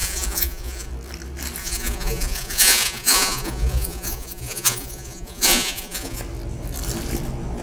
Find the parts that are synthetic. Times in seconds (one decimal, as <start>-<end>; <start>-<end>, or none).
0.0-0.9; 1.6-6.2